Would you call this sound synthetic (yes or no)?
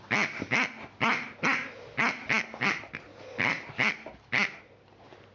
no